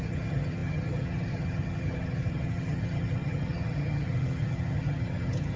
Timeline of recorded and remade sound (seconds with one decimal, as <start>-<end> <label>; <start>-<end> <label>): 0.0-5.6 remade